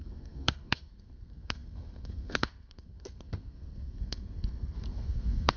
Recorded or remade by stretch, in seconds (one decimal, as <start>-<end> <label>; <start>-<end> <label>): 0.0-5.6 remade